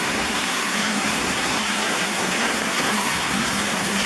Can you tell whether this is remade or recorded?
remade